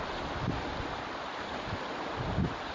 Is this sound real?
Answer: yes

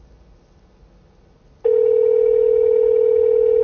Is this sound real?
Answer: yes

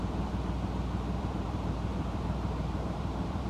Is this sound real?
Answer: no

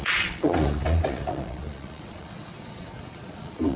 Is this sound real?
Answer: no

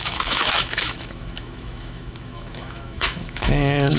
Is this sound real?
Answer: no